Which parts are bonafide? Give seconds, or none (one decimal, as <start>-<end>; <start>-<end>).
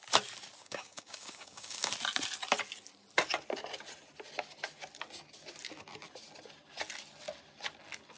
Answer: 0.0-0.6; 1.9-8.2